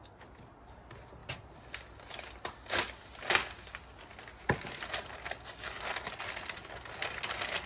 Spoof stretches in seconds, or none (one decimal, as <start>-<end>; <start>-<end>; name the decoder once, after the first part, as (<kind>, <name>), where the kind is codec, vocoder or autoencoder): none